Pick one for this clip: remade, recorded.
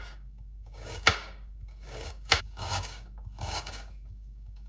remade